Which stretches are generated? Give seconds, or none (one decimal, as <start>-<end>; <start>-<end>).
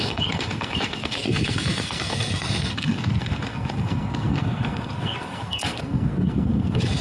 0.0-7.0